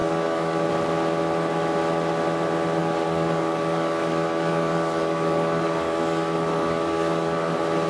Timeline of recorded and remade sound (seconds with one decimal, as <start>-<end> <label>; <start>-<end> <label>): 0.0-0.7 remade; 0.7-2.8 recorded; 2.8-7.5 remade; 7.5-7.9 recorded